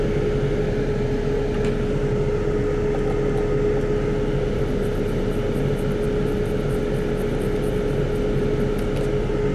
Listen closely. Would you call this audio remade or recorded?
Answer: recorded